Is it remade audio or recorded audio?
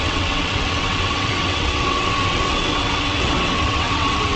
remade